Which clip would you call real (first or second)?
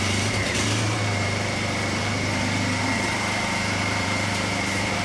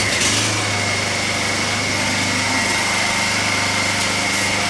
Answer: second